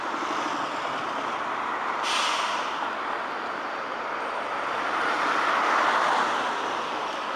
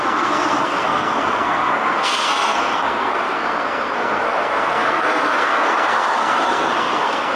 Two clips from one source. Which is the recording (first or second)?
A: first